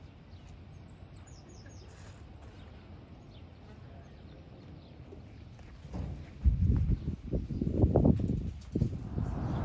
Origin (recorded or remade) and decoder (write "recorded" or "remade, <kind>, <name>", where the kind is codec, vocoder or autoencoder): recorded